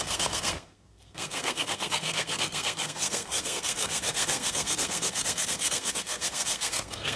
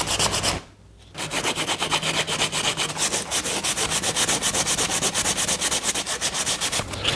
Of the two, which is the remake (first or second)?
first